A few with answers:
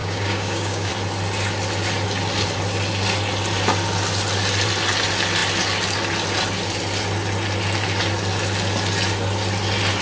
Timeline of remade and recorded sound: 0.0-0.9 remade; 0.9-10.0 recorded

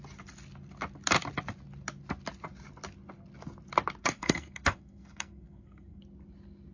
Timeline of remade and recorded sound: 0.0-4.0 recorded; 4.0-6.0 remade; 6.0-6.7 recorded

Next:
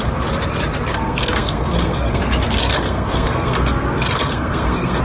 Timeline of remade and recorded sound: 0.0-0.9 recorded; 0.9-2.2 remade; 2.2-2.6 recorded; 2.6-5.0 remade

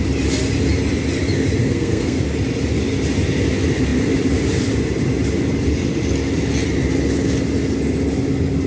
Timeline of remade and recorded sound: 0.0-1.6 recorded; 1.6-2.2 remade; 2.2-8.7 recorded

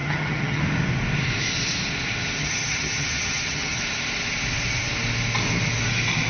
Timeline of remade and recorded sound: 0.0-0.6 remade; 0.6-2.4 recorded; 2.4-3.8 remade; 3.8-6.3 recorded

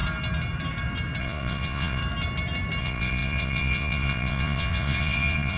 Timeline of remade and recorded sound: 0.0-1.2 recorded; 1.2-2.0 remade; 2.0-2.8 recorded; 2.8-5.6 remade

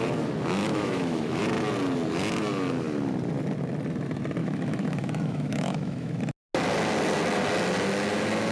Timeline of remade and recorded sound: 0.0-0.6 recorded; 0.6-1.4 remade; 1.4-4.4 recorded; 4.4-6.2 remade; 6.2-8.5 recorded